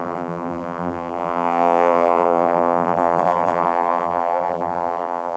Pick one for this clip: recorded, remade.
remade